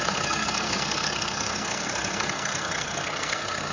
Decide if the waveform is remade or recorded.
remade